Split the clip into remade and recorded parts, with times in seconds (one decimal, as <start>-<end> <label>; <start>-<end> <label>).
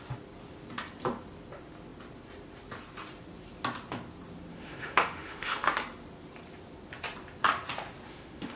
0.0-4.5 recorded; 4.5-5.7 remade; 5.7-8.1 recorded; 8.1-8.6 remade